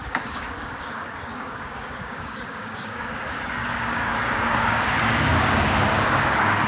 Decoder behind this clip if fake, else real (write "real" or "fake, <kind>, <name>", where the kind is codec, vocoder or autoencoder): fake, codec, DAC